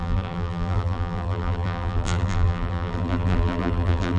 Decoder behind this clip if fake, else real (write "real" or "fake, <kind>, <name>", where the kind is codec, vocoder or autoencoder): fake, vocoder, BigVGAN v2